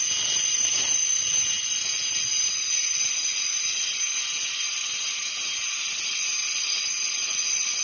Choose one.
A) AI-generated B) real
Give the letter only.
B